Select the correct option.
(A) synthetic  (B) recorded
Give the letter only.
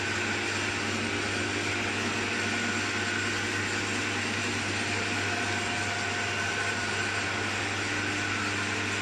B